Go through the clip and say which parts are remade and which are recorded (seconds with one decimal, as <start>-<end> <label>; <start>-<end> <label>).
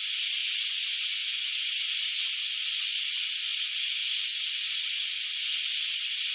0.0-0.4 recorded; 0.4-1.9 remade; 1.9-6.3 recorded